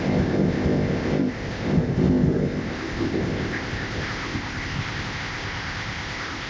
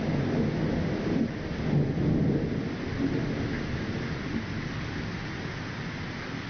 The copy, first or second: first